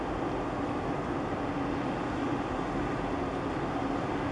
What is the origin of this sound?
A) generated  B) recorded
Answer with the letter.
B